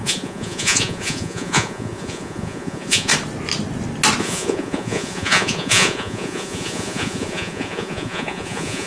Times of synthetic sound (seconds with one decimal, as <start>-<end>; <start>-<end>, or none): 0.0-3.1; 4.2-8.9